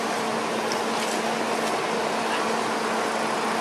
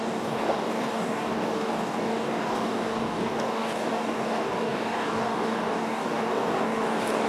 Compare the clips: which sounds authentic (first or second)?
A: first